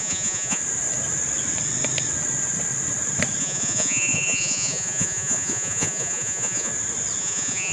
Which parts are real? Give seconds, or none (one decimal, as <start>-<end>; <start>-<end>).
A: 0.6-3.4; 6.7-7.2